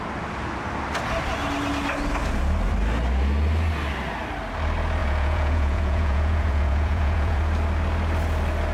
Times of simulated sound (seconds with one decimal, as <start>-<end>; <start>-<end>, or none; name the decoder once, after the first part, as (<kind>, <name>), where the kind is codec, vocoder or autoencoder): 5.0-7.4 (vocoder, Vocos)